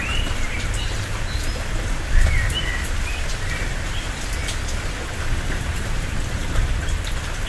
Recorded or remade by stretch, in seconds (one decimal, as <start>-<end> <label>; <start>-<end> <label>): 0.0-1.4 remade; 1.4-5.5 recorded; 5.5-7.5 remade